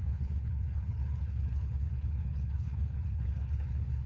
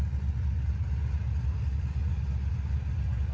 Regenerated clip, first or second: first